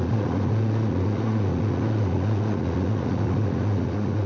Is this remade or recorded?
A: remade